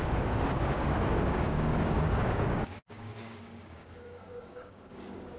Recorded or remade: remade